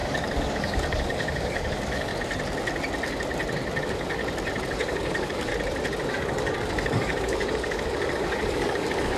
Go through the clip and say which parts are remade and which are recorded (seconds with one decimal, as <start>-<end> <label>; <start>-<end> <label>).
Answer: 0.0-2.1 remade; 2.1-3.8 recorded; 3.8-4.2 remade; 4.2-4.7 recorded; 4.7-5.5 remade; 5.5-6.1 recorded; 6.1-9.2 remade